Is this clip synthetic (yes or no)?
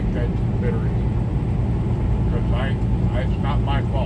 no